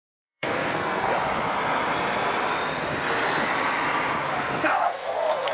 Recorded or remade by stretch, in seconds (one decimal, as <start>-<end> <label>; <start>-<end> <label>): 0.0-1.1 remade; 1.1-4.4 recorded; 4.4-5.5 remade